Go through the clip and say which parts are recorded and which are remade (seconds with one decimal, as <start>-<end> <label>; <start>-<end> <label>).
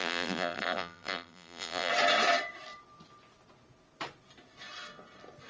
0.0-1.9 remade; 1.9-5.5 recorded